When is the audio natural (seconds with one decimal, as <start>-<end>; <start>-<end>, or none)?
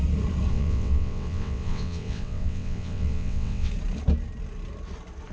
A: 0.0-0.5; 3.7-5.3